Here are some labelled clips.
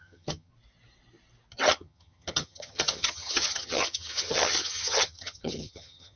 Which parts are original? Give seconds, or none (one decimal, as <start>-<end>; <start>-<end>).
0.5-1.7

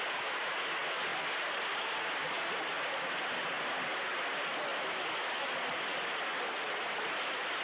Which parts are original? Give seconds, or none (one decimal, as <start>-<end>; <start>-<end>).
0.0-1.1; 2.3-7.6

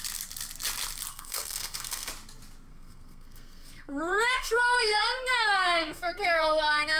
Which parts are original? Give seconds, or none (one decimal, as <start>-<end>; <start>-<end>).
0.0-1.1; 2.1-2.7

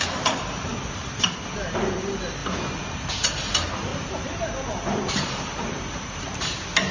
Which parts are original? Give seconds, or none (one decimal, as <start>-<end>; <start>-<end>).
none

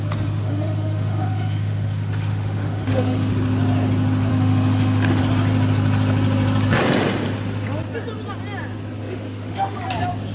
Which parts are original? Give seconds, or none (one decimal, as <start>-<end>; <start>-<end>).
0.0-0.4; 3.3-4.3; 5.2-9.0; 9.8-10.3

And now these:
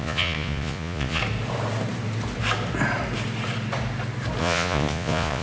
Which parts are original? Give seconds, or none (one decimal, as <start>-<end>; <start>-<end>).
1.2-4.4